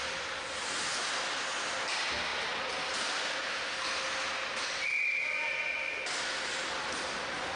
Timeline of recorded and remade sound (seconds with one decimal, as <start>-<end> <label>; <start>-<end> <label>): 0.0-7.6 recorded